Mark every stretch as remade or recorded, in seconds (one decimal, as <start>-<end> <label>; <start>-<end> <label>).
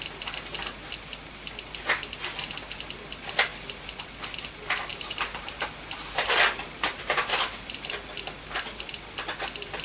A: 0.0-4.9 recorded; 4.9-7.4 remade; 7.4-9.8 recorded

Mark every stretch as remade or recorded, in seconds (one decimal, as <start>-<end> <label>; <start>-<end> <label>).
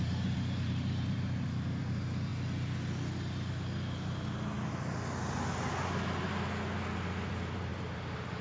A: 0.0-2.3 remade; 2.3-7.3 recorded; 7.3-8.4 remade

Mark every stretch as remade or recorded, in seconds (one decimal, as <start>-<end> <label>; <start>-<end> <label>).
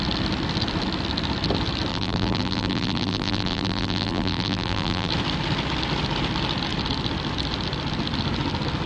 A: 0.0-1.9 recorded; 1.9-5.1 remade; 5.1-8.9 recorded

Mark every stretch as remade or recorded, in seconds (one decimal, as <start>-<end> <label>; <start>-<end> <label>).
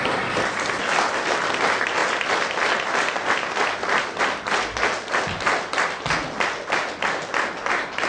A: 0.0-8.1 recorded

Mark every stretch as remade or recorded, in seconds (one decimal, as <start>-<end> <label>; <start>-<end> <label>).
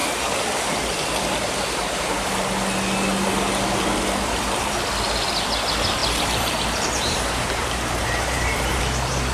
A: 0.0-6.0 recorded; 6.0-8.8 remade; 8.8-9.3 recorded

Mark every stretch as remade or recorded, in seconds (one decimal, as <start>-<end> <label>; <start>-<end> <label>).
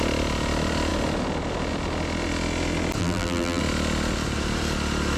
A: 0.0-3.0 recorded; 3.0-3.6 remade; 3.6-5.2 recorded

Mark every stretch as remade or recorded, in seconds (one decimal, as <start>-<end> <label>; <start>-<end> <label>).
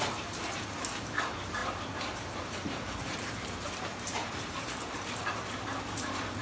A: 0.0-6.4 remade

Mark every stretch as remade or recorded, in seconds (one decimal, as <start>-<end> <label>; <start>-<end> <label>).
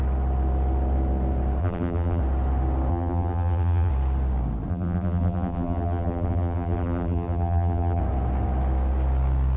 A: 0.0-1.6 recorded; 1.6-2.2 remade; 2.2-2.9 recorded; 2.9-3.9 remade; 3.9-4.7 recorded; 4.7-8.0 remade; 8.0-9.6 recorded